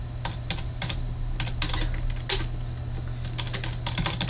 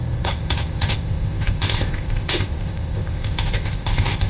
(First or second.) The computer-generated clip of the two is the second